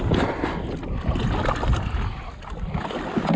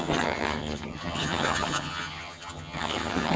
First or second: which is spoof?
second